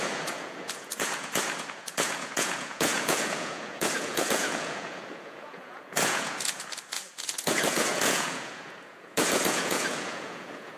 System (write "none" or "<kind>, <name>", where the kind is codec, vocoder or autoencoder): vocoder, Vocos